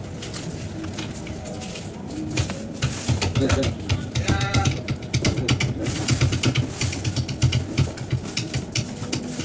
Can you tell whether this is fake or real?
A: real